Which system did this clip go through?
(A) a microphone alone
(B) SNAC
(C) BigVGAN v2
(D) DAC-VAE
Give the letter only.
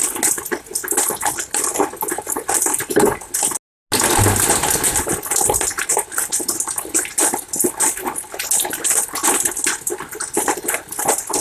A